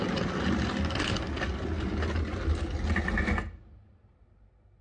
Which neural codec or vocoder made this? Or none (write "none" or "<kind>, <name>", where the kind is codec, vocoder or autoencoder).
none